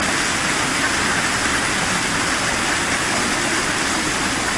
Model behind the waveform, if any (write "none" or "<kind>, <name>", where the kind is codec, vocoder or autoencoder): none